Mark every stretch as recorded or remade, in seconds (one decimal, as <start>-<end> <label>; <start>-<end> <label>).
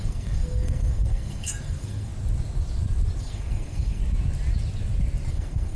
0.0-2.1 remade; 2.1-3.2 recorded; 3.2-4.0 remade; 4.0-5.3 recorded; 5.3-5.8 remade